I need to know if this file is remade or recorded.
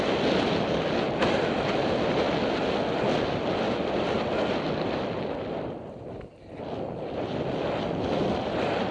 recorded